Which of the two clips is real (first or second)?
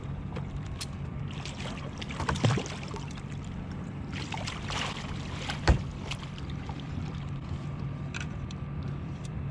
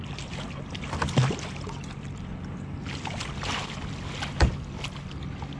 second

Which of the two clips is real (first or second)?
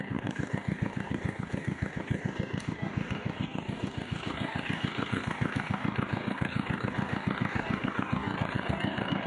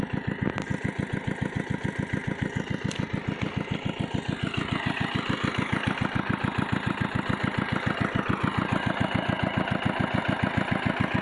second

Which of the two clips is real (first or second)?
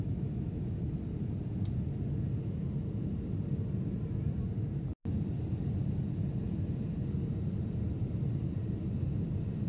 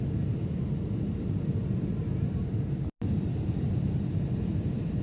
first